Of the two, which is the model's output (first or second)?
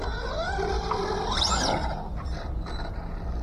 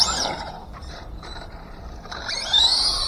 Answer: second